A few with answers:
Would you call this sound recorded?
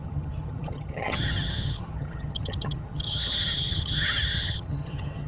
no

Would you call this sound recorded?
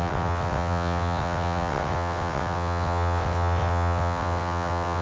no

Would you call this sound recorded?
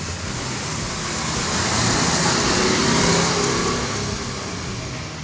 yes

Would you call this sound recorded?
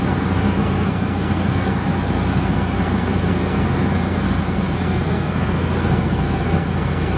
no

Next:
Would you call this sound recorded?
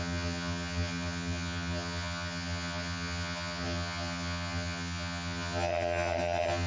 no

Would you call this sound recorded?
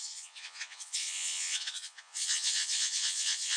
no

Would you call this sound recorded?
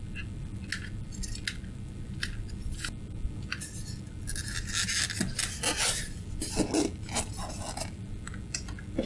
yes